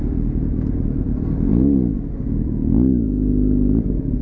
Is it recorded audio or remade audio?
recorded